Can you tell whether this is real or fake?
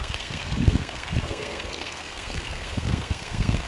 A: fake